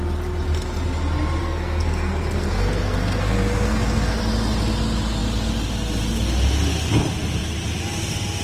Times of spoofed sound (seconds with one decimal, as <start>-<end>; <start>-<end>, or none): 1.4-4.2